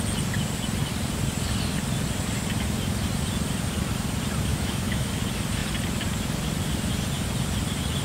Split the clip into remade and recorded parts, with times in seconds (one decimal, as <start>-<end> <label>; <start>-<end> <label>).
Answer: 0.0-4.5 recorded; 4.5-5.1 remade; 5.1-8.0 recorded